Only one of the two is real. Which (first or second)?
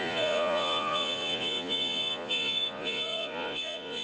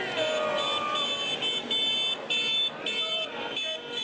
second